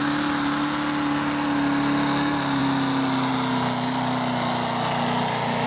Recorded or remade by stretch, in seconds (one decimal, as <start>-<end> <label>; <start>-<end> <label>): 0.0-5.7 recorded